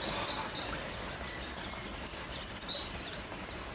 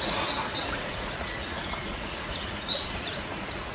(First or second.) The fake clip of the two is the second